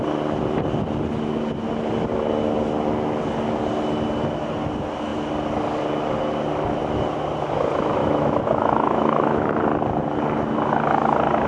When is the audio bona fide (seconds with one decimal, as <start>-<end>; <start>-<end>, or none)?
0.0-8.0; 9.6-11.5